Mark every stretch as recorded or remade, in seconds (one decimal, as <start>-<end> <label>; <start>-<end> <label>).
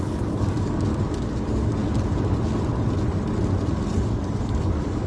0.0-0.9 remade; 0.9-1.4 recorded; 1.4-1.8 remade; 1.8-4.0 recorded; 4.0-5.1 remade